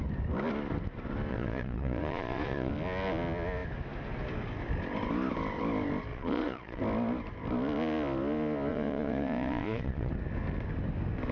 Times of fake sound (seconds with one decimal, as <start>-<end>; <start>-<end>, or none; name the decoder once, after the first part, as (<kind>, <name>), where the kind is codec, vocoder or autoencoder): 1.3-2.7 (vocoder, Vocos); 6.1-6.8; 8.7-10.1

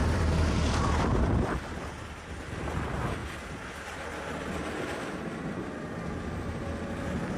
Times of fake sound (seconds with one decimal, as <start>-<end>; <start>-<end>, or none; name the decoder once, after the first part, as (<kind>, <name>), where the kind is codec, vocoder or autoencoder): 0.0-1.2 (vocoder, BigVGAN v2); 3.2-5.7

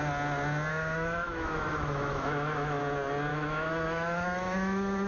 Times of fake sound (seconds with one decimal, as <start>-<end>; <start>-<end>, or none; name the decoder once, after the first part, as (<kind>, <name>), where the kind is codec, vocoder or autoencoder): 0.7-2.8 (autoencoder, DAC-VAE); 3.3-5.1

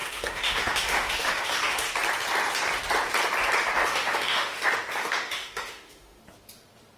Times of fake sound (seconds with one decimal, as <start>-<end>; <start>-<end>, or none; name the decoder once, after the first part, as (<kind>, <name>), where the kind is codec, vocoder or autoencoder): 0.0-1.8 (autoencoder, DAC-VAE); 3.9-4.6; 5.0-6.2